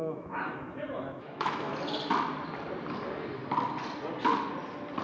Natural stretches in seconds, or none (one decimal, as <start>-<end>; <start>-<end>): 1.7-5.0